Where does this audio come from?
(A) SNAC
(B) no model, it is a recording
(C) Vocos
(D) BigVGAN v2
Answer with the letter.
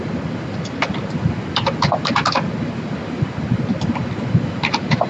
B